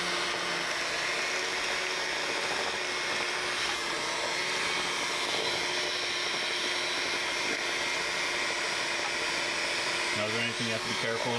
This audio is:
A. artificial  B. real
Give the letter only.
B